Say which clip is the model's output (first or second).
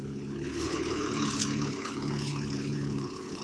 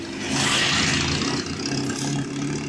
first